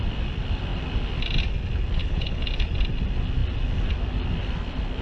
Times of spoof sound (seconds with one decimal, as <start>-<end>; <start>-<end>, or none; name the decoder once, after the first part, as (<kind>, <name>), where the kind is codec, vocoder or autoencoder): 2.0-2.5 (codec, HILCodec)